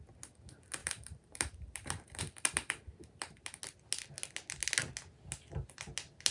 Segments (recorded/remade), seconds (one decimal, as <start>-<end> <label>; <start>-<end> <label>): 0.0-0.8 recorded; 0.8-2.2 remade; 2.2-6.3 recorded